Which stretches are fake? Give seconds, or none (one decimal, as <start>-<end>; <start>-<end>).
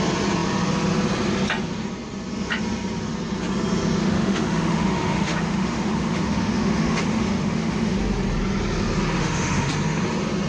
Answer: 4.0-8.0; 9.2-9.7